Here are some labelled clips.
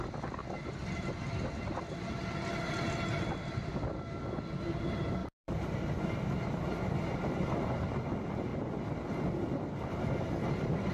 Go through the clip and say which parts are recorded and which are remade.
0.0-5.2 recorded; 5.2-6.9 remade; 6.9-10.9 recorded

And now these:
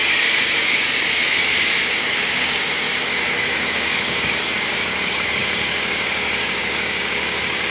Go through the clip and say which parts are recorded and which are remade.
0.0-7.7 remade